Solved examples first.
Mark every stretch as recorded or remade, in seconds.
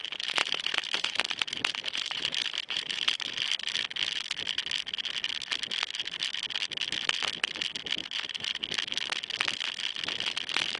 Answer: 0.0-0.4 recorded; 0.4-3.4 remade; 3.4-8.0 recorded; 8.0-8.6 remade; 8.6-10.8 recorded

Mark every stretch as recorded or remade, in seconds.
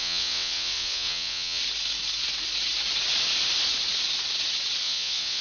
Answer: 0.0-1.6 remade; 1.6-4.8 recorded; 4.8-5.4 remade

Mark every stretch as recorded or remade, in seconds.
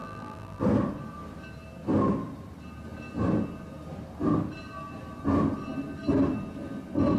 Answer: 0.0-0.6 remade; 0.6-7.2 recorded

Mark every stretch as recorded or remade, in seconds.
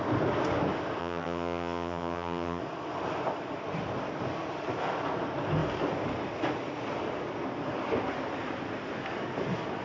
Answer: 0.0-1.0 recorded; 1.0-2.6 remade; 2.6-9.8 recorded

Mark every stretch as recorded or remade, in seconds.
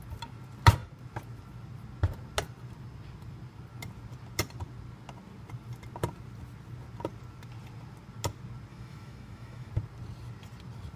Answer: 0.0-8.7 recorded; 8.7-9.7 remade; 9.7-11.0 recorded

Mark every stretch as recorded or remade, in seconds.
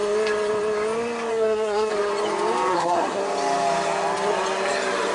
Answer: 0.0-1.3 recorded; 1.3-1.9 remade; 1.9-2.7 recorded; 2.7-3.2 remade; 3.2-5.1 recorded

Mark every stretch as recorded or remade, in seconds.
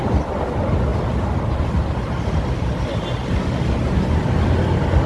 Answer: 0.0-5.1 recorded